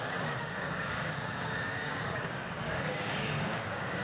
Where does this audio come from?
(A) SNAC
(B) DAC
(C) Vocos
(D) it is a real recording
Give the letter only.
B